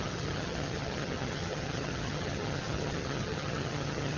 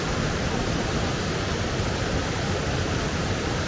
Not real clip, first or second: first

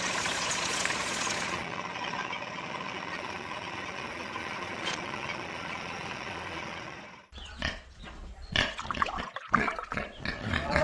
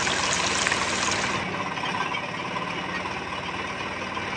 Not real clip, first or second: first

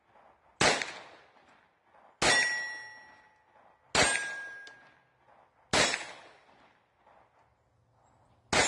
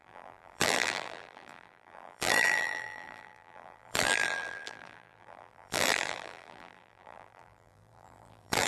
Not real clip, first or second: second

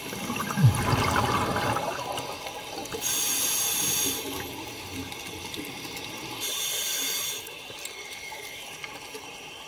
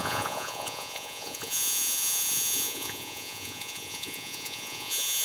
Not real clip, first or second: second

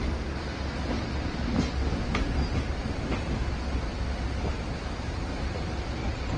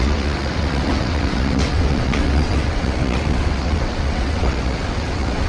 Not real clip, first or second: second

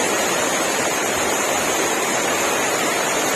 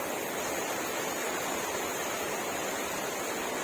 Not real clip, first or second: first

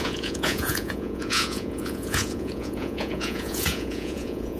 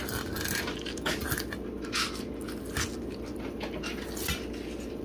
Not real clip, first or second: first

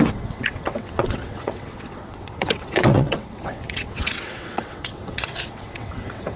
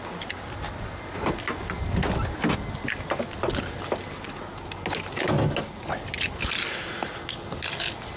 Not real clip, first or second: first